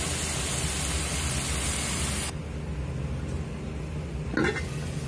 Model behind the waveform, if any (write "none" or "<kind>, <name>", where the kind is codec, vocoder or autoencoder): none